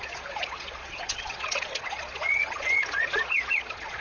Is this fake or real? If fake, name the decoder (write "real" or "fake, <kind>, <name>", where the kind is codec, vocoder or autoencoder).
fake, vocoder, Vocos